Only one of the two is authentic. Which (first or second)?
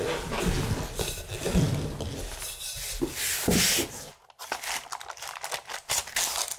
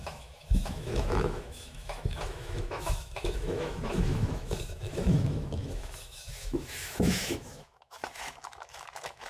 first